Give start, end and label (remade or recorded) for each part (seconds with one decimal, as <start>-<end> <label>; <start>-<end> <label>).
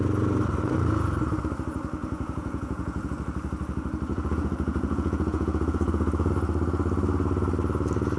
0.0-2.0 recorded; 2.0-3.1 remade; 3.1-4.1 recorded; 4.1-6.3 remade; 6.3-8.2 recorded